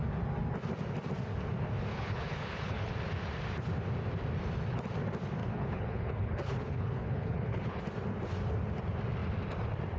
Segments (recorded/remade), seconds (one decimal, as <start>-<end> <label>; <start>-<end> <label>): 0.0-1.9 recorded; 1.9-2.9 remade; 2.9-5.4 recorded; 5.4-7.8 remade; 7.8-10.0 recorded